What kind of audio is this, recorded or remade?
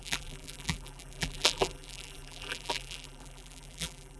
remade